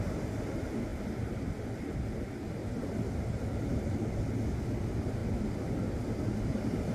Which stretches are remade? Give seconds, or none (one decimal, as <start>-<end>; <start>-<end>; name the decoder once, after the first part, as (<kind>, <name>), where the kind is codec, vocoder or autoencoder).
0.9-2.2 (vocoder, BigVGAN v2); 2.6-4.4